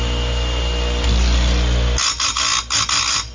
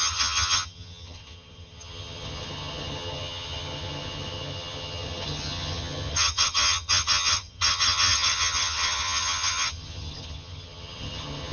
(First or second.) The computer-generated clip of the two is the second